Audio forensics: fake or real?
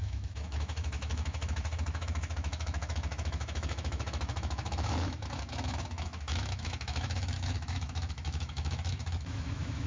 fake